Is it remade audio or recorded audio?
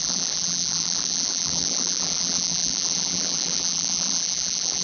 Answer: remade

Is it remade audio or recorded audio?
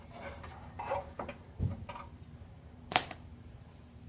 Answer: remade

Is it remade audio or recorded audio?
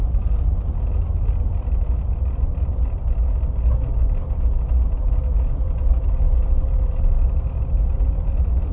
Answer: recorded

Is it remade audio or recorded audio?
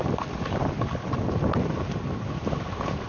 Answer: recorded